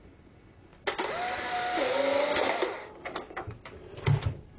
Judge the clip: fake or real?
real